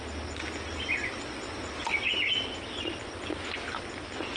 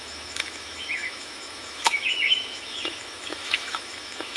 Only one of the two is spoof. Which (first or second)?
second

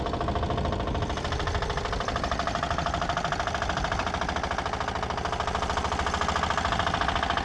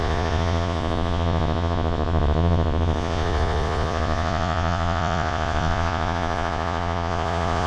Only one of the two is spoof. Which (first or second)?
second